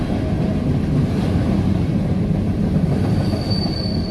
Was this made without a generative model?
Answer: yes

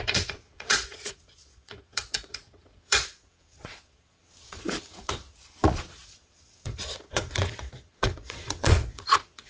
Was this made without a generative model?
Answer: no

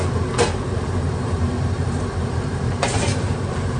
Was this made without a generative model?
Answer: no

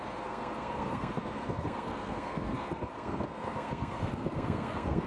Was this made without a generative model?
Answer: no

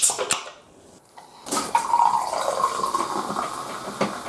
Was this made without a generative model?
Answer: yes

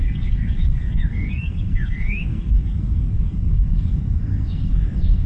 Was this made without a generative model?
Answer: no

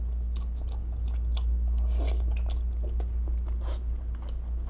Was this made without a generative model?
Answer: yes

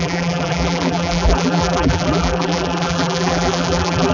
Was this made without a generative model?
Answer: no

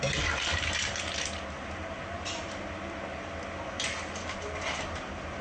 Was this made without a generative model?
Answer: yes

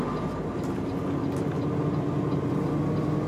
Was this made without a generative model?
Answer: yes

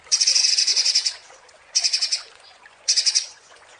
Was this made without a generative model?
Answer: no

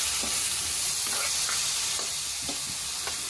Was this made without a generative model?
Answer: yes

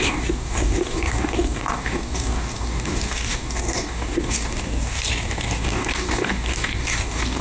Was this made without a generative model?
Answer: no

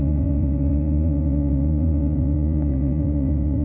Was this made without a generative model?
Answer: no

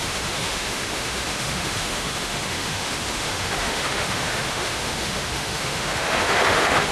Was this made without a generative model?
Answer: no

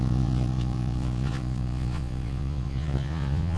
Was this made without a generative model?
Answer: no